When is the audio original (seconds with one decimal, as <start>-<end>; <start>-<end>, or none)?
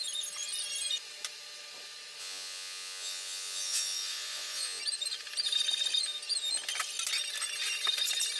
0.0-2.2; 4.8-8.4